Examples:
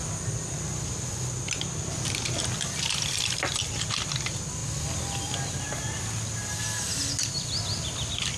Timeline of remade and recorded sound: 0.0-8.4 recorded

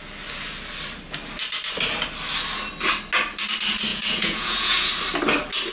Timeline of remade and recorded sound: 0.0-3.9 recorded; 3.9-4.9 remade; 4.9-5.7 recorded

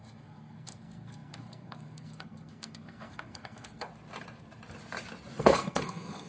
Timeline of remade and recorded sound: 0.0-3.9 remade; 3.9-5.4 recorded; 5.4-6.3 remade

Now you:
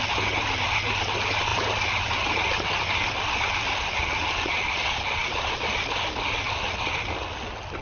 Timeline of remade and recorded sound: 0.0-7.8 recorded

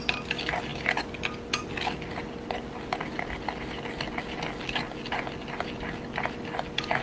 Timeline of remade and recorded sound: 0.0-7.0 recorded

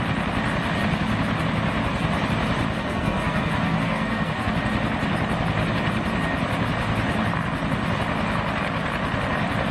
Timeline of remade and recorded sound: 0.0-2.8 recorded; 2.8-4.5 remade; 4.5-9.7 recorded

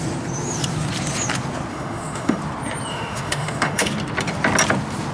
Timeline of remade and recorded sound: 0.0-1.7 recorded; 1.7-2.4 remade; 2.4-2.9 recorded; 2.9-3.9 remade; 3.9-5.1 recorded

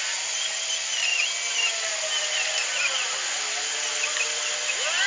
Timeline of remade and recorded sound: 0.0-5.1 recorded